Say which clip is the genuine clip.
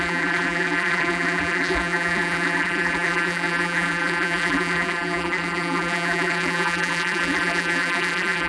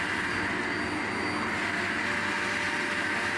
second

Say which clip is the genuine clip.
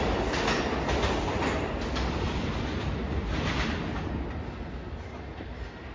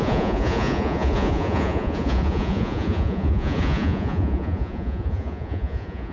first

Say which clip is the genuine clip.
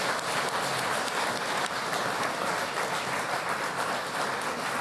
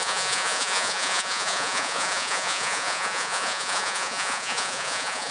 first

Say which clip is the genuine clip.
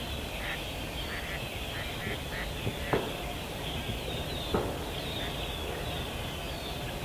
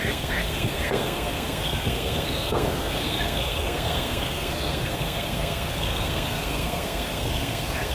first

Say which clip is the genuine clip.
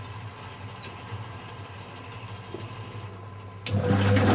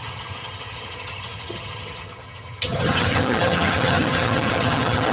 first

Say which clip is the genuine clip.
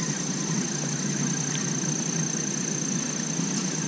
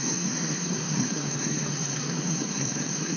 first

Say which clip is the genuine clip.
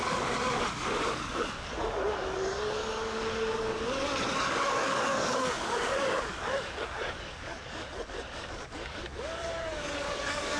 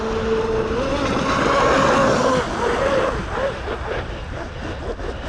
second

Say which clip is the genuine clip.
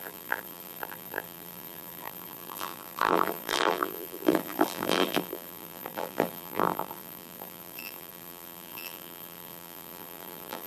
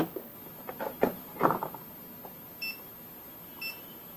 second